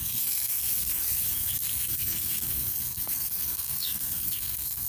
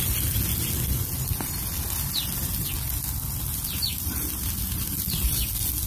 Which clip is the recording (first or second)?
second